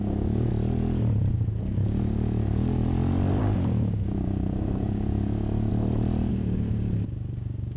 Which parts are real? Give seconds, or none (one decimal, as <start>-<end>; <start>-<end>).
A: 0.5-1.3; 2.8-3.4; 5.7-6.3